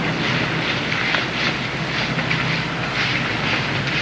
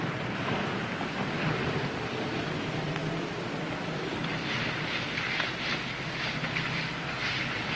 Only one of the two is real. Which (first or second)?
first